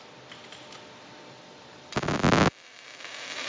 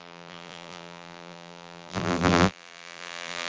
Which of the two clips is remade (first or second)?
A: second